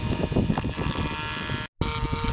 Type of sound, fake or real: real